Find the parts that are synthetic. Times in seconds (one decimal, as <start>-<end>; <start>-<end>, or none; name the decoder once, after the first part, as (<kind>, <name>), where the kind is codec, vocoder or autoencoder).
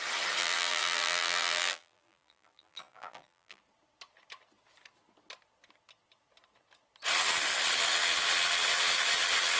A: 0.4-3.6 (vocoder, BigVGAN v2)